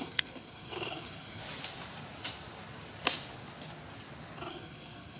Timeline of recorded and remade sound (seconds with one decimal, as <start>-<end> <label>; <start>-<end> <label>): 0.0-1.4 remade; 1.4-4.5 recorded; 4.5-5.2 remade

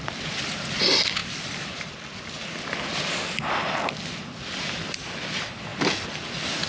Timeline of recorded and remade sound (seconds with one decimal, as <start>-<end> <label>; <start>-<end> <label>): 0.0-1.2 recorded; 1.2-1.9 remade; 1.9-6.7 recorded

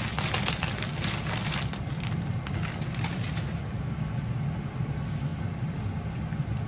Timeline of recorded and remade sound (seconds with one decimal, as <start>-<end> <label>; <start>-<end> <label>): 0.0-6.7 recorded

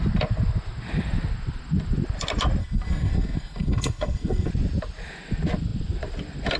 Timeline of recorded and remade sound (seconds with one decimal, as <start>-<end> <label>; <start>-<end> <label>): 0.0-2.6 recorded; 2.6-4.5 remade; 4.5-6.6 recorded

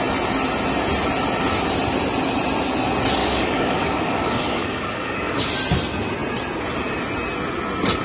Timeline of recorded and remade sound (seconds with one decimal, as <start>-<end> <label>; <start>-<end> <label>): 0.0-3.2 recorded; 3.2-5.5 remade; 5.5-8.0 recorded